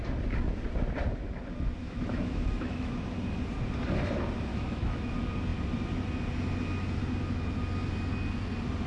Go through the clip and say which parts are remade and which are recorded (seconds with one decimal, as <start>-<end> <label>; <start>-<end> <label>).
0.0-1.8 recorded; 1.8-2.9 remade; 2.9-4.5 recorded; 4.5-5.1 remade; 5.1-8.9 recorded